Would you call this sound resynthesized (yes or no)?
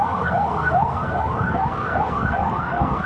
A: yes